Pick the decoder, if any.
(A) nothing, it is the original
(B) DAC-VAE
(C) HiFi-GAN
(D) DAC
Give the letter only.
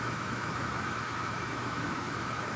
B